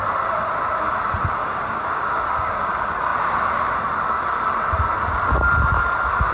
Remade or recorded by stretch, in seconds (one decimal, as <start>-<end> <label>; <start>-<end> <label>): 0.0-1.4 recorded; 1.4-2.7 remade; 2.7-6.3 recorded